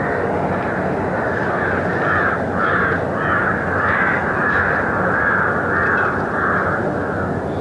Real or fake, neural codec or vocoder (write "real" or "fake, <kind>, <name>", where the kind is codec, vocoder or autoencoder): real